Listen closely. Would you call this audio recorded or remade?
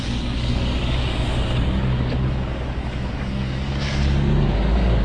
remade